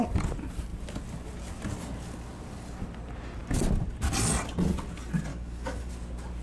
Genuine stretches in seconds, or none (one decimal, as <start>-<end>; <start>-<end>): 0.0-5.3; 5.9-6.4